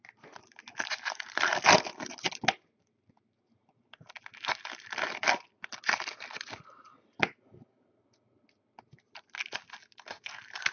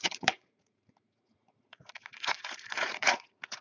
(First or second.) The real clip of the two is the first